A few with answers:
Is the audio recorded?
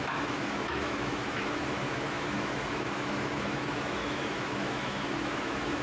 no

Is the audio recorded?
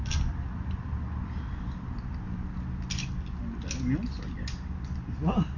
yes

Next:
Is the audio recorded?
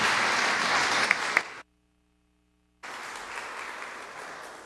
yes